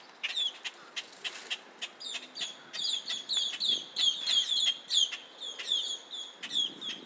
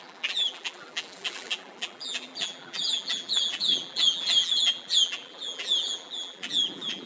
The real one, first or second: first